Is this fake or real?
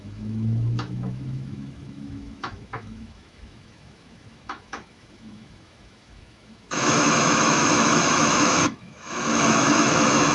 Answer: fake